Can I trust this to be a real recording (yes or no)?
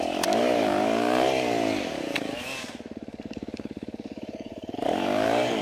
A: no